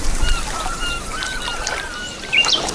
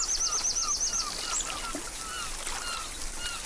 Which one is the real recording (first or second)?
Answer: second